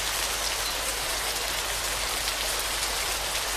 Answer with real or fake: real